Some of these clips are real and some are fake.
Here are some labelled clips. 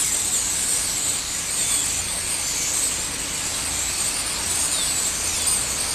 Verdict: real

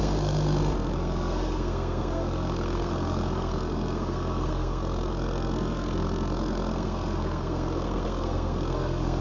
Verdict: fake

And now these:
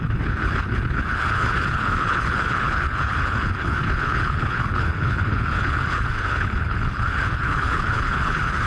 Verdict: fake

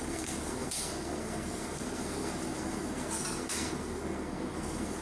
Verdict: fake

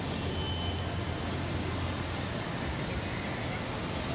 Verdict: real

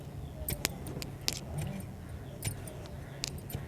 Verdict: real